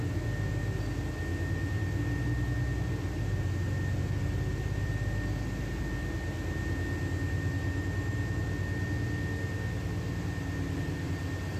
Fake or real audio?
real